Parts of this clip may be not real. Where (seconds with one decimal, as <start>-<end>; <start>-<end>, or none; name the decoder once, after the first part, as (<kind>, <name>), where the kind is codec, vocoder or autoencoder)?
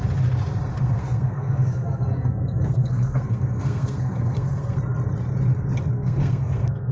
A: 0.7-4.8 (codec, SNAC); 5.9-6.9